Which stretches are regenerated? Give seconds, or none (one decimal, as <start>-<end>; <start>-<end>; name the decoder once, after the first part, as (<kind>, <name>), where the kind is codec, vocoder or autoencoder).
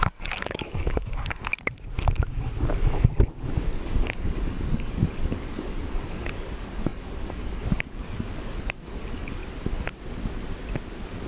0.0-1.5 (codec, DAC); 3.7-9.4